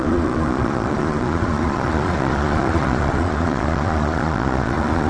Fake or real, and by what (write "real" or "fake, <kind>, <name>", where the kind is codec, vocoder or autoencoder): fake, vocoder, Vocos